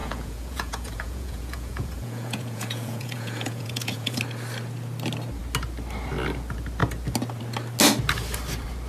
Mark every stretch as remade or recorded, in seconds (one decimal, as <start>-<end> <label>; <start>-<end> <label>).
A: 0.0-4.2 remade; 4.2-8.9 recorded